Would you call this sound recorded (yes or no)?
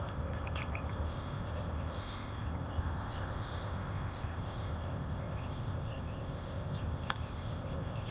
no